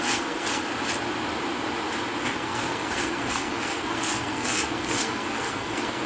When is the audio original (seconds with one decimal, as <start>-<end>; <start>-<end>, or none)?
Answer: 0.7-2.2